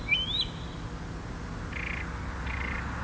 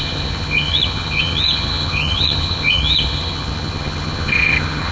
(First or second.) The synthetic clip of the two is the second